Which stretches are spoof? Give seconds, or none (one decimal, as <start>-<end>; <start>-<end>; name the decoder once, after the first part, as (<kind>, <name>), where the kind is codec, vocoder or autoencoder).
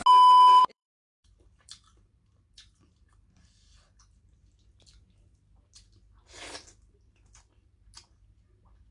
0.6-4.4 (vocoder, BigVGAN v2)